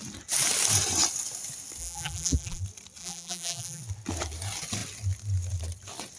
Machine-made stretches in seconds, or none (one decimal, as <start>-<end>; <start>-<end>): 1.8-2.6; 3.0-3.8